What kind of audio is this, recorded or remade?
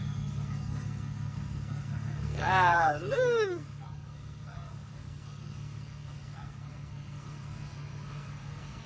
remade